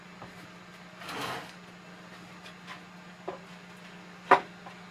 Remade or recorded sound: recorded